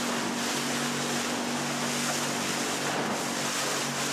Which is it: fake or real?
real